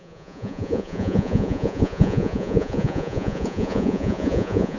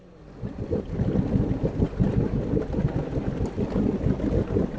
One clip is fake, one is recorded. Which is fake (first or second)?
first